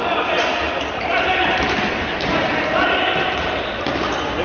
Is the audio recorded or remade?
recorded